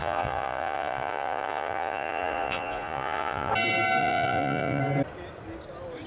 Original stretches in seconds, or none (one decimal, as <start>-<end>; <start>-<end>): 3.5-4.0; 4.8-6.1